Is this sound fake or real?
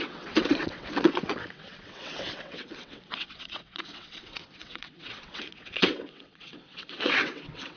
fake